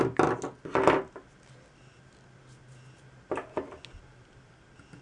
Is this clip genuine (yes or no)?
yes